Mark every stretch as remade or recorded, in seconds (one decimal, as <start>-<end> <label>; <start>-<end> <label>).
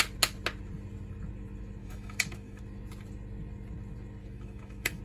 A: 0.0-1.8 recorded; 1.8-2.6 remade; 2.6-4.2 recorded; 4.2-5.0 remade